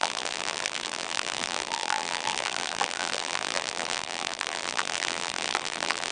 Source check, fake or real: fake